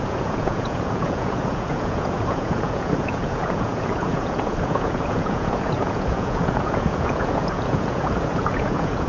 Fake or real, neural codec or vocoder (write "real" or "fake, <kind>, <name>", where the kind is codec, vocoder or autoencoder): fake, vocoder, Vocos